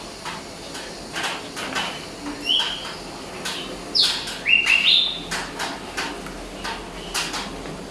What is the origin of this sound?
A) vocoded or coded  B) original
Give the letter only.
B